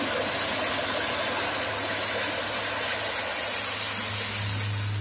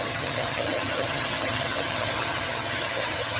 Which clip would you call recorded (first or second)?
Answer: first